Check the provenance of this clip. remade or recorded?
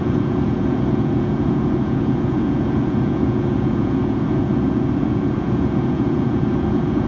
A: remade